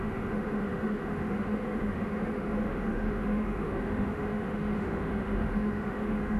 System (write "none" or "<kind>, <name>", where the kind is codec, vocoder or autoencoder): autoencoder, DAC-VAE